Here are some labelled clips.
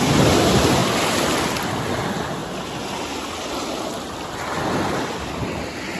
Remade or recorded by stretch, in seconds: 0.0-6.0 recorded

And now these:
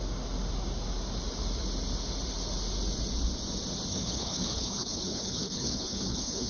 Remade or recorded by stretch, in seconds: 0.0-3.9 recorded; 3.9-6.5 remade